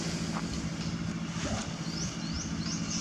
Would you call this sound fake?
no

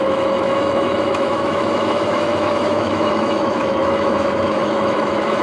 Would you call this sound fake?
yes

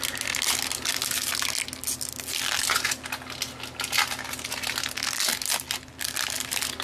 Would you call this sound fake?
no